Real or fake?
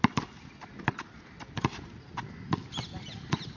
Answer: real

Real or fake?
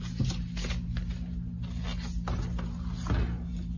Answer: real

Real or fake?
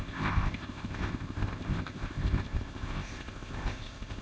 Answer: fake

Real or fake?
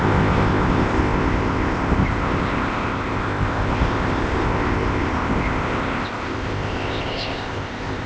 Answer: fake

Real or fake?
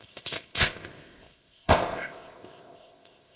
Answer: fake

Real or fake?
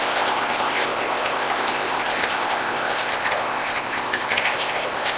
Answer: fake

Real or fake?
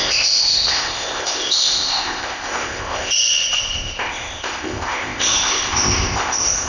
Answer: fake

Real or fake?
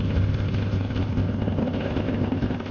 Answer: fake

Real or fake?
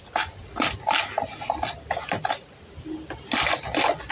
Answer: real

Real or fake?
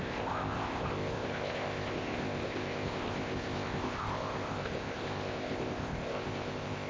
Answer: fake